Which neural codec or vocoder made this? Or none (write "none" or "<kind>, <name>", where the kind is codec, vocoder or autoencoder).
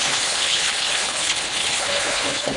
codec, HILCodec